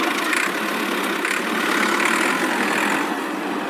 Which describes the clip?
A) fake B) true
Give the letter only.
B